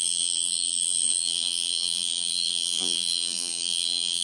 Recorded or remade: remade